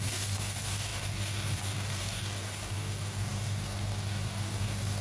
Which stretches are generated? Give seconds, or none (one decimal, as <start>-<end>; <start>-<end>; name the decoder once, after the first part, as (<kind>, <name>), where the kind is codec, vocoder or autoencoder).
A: 0.0-5.0 (codec, DAC)